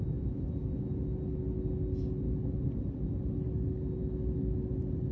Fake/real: real